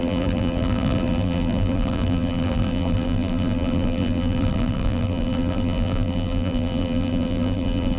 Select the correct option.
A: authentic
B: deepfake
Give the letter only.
B